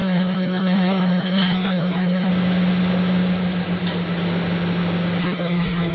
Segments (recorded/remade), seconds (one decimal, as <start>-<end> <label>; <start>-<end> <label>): 0.0-2.3 remade; 2.3-5.2 recorded; 5.2-5.9 remade